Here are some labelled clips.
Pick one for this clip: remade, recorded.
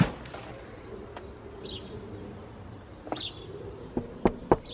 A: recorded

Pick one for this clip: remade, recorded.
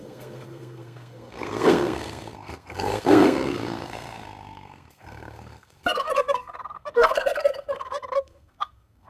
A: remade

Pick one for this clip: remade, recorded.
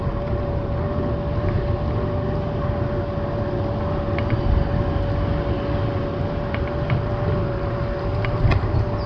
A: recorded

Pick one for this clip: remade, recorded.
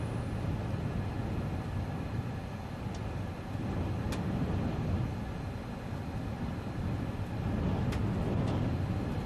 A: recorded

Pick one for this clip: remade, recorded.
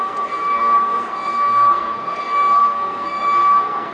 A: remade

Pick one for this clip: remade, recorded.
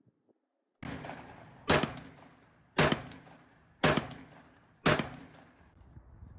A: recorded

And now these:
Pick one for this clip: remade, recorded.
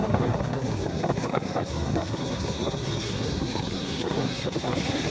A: remade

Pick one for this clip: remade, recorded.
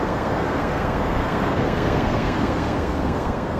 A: remade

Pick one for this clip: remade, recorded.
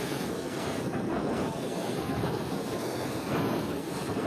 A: remade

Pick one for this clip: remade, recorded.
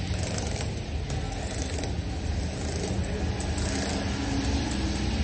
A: recorded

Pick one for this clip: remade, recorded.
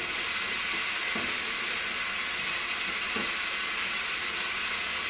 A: recorded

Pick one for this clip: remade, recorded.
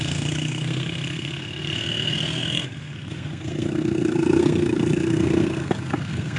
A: remade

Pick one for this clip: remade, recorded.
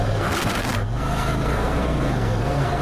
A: remade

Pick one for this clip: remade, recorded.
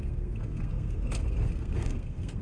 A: remade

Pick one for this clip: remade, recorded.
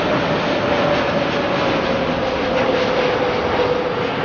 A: recorded